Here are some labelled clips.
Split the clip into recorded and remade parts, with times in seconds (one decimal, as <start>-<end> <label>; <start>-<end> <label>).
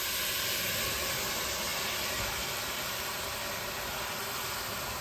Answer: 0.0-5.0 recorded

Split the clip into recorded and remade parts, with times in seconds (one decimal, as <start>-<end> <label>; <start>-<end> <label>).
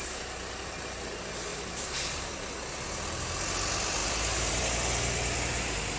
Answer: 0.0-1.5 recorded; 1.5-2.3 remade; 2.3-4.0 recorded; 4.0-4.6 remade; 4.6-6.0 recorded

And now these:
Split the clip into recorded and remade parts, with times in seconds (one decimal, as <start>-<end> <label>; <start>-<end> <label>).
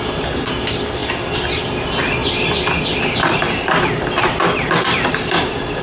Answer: 0.0-1.0 recorded; 1.0-1.6 remade; 1.6-2.2 recorded; 2.2-5.8 remade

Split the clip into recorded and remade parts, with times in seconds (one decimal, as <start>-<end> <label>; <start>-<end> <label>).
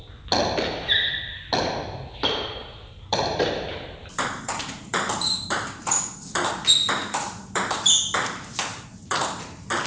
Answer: 0.0-2.6 recorded; 2.6-6.5 remade; 6.5-7.0 recorded; 7.0-7.6 remade; 7.6-8.7 recorded; 8.7-9.4 remade; 9.4-9.9 recorded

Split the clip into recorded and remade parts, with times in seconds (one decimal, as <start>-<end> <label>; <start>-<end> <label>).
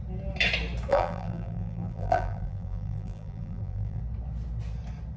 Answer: 0.0-0.9 recorded; 0.9-4.0 remade; 4.0-5.2 recorded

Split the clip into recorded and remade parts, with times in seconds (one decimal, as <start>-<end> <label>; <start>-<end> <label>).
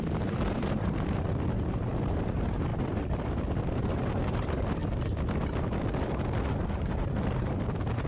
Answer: 0.0-4.8 remade; 4.8-7.0 recorded; 7.0-8.1 remade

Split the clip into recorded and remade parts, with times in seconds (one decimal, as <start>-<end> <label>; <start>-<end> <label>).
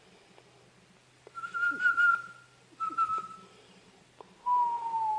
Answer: 0.0-1.0 recorded; 1.0-4.1 remade; 4.1-5.2 recorded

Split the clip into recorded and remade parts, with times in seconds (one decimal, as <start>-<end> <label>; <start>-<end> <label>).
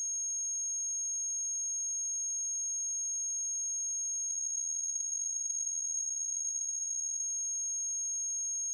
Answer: 0.0-4.3 recorded; 4.3-7.2 remade; 7.2-8.7 recorded